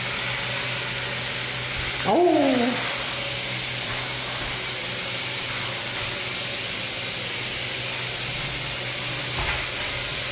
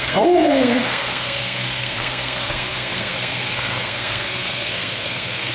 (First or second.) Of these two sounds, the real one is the first